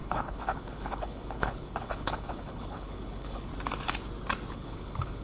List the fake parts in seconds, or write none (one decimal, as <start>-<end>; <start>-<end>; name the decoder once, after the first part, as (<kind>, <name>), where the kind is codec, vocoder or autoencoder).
0.0-3.5 (codec, HILCodec); 4.5-5.2